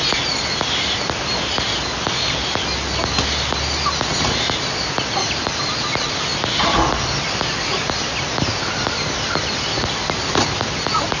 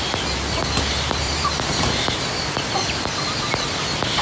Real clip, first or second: first